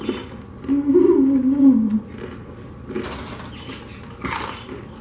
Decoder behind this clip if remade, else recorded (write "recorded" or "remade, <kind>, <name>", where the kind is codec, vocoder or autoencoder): recorded